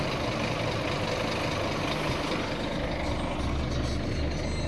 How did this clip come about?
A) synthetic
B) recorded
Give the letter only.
B